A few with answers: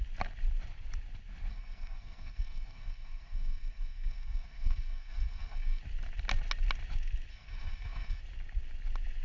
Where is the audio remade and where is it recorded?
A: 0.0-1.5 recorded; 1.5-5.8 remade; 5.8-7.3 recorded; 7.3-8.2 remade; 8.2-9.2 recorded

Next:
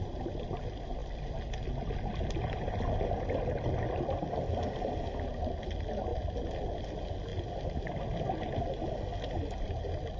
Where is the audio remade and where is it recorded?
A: 0.0-10.2 recorded

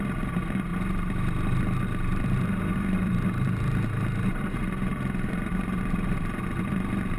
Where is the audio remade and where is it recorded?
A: 0.0-0.7 remade; 0.7-2.2 recorded; 2.2-7.2 remade

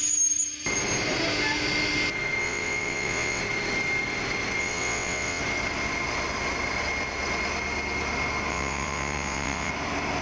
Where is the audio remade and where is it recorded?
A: 0.0-2.4 recorded; 2.4-3.4 remade; 3.4-4.6 recorded; 4.6-5.4 remade; 5.4-8.5 recorded; 8.5-9.7 remade; 9.7-10.2 recorded

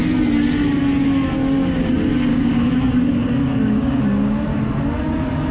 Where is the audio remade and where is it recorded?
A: 0.0-2.3 recorded; 2.3-4.0 remade; 4.0-5.5 recorded

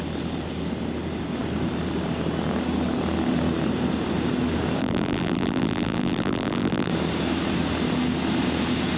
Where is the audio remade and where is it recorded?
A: 0.0-4.8 recorded; 4.8-6.9 remade; 6.9-9.0 recorded

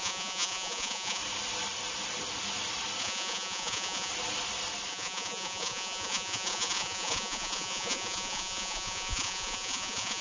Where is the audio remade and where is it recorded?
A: 0.0-1.2 remade; 1.2-3.0 recorded; 3.0-4.1 remade; 4.1-4.9 recorded; 4.9-10.2 remade